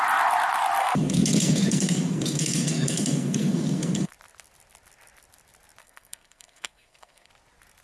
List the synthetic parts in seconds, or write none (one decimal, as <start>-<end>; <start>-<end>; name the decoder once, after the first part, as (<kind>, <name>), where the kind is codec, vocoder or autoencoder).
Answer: 0.8-4.1 (codec, SNAC); 5.8-7.3